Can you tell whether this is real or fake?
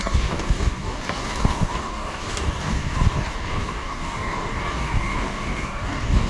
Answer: fake